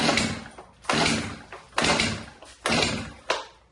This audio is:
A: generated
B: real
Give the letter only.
B